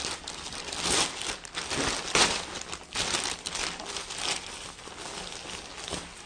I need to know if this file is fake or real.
real